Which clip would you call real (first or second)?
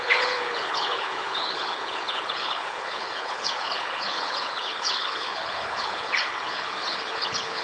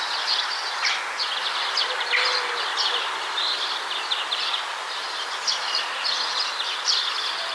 second